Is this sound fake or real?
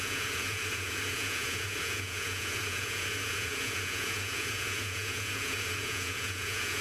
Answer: fake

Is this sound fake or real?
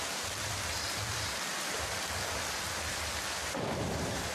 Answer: fake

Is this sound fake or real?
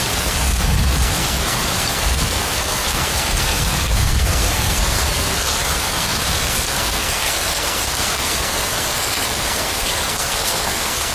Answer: fake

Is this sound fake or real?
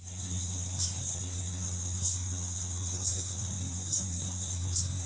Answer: fake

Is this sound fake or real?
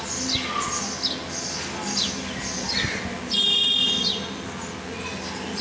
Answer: real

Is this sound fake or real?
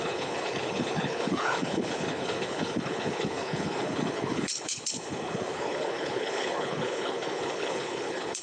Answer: fake